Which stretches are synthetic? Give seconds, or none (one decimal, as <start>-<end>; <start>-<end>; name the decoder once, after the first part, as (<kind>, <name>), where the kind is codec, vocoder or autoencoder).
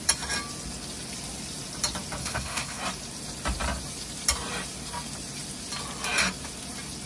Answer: 2.2-2.8 (codec, SNAC)